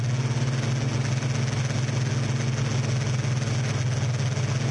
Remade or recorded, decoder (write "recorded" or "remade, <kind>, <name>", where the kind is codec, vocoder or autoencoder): recorded